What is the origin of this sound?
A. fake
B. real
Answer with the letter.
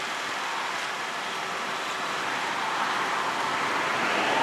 B